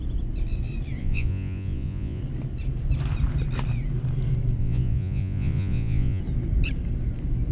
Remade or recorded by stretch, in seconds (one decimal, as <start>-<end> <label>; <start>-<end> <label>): 0.0-1.0 recorded; 1.0-2.2 remade; 2.2-4.6 recorded; 4.6-6.2 remade; 6.2-7.5 recorded